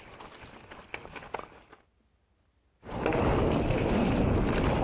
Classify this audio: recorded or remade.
recorded